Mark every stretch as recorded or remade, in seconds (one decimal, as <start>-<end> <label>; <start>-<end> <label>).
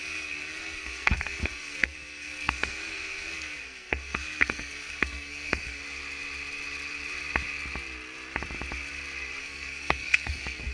0.0-5.8 remade; 5.8-9.4 recorded; 9.4-10.7 remade